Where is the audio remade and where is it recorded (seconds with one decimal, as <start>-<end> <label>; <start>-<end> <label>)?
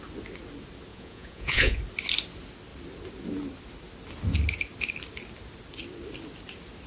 0.0-0.9 recorded; 0.9-1.8 remade; 1.8-6.9 recorded